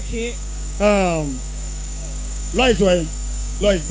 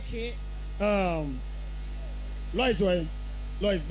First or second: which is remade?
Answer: first